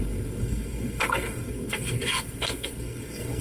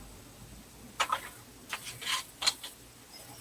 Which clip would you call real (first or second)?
second